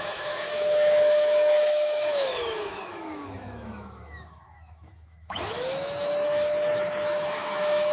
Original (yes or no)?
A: no